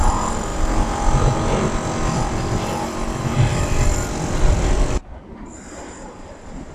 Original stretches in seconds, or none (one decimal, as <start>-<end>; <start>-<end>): 0.5-2.0